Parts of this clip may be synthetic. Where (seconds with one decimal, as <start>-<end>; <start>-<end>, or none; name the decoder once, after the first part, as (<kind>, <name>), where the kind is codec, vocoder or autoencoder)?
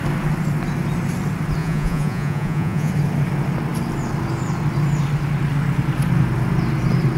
1.6-2.9 (vocoder, Vocos)